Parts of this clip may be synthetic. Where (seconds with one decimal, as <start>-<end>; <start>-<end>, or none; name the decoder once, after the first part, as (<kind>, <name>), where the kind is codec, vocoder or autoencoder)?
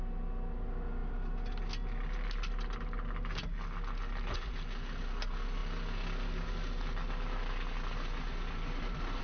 none